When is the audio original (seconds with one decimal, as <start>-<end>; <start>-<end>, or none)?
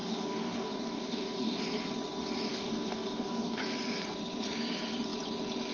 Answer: 1.6-2.5; 3.6-5.7